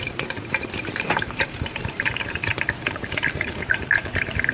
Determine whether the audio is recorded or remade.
remade